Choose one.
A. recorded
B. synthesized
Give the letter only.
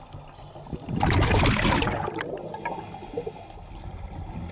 A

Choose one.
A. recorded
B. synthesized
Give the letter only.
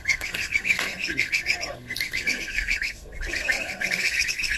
B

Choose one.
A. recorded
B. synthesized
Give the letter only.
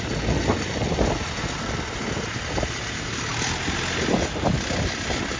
A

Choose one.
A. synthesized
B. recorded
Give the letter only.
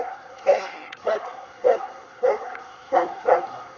A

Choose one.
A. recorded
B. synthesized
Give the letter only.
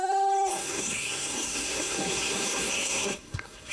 B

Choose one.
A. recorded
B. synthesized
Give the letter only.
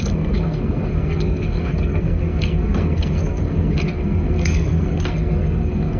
B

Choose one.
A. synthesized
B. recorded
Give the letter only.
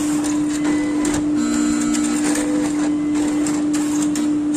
B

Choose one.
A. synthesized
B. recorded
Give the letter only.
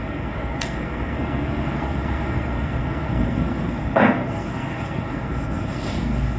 A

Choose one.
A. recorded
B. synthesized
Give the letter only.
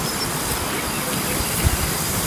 A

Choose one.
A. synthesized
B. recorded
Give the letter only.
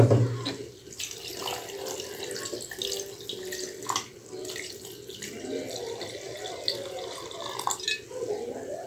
B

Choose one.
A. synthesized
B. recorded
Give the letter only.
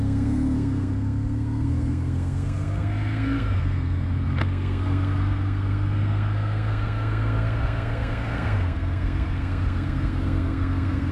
A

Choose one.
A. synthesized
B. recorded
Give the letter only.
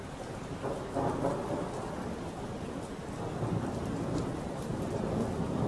B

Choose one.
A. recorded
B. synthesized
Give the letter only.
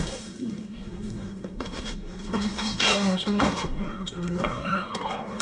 B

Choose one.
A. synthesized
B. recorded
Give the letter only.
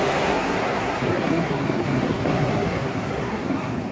A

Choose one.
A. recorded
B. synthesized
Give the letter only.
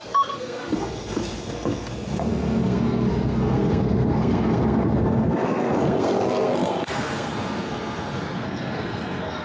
B